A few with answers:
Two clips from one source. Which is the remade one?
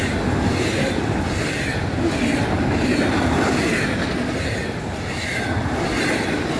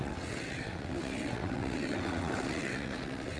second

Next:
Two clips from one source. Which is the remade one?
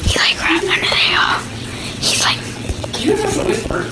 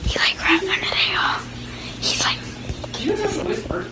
first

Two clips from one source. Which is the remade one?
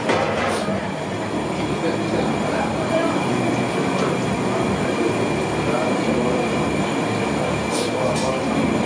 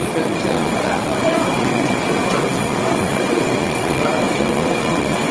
second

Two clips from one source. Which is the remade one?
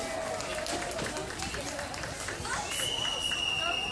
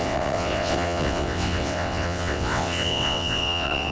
second